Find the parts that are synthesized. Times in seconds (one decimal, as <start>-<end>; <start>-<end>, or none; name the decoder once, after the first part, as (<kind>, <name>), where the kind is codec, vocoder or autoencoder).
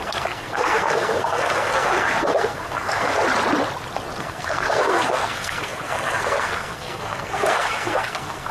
0.0-3.2 (codec, SNAC); 4.2-8.5